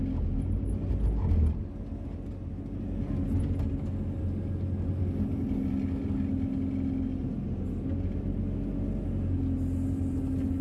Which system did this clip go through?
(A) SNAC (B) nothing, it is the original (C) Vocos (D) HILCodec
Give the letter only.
B